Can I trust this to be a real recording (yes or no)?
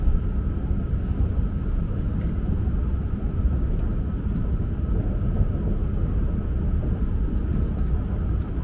yes